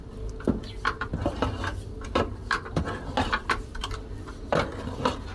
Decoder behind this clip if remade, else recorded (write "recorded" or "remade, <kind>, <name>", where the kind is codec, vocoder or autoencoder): recorded